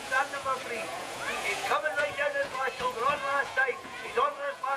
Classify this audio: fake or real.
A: fake